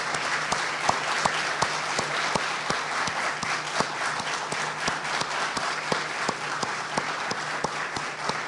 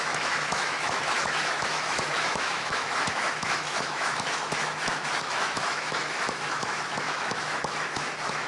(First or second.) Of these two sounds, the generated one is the second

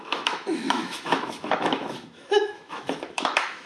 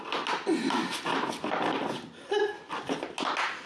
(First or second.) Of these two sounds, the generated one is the first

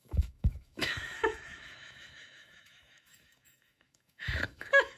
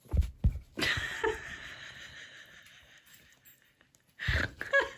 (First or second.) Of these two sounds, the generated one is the first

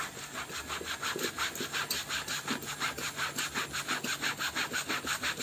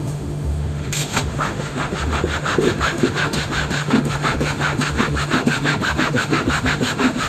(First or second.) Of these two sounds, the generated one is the second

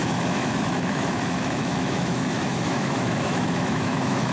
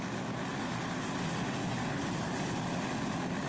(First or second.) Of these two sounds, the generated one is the first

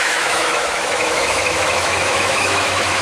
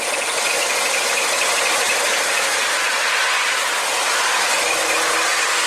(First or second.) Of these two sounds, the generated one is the first